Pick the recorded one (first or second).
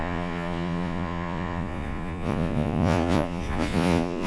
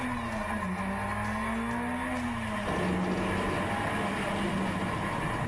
second